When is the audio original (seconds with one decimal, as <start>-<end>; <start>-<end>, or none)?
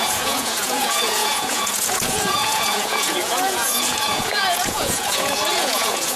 none